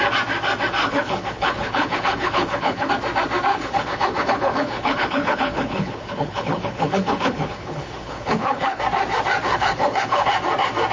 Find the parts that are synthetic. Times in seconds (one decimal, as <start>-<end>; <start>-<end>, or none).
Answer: 0.8-2.9; 3.5-8.8; 9.5-10.3